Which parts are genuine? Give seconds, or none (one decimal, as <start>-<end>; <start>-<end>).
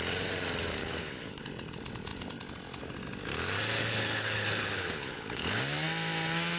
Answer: 0.0-0.8; 1.4-3.8; 5.6-6.6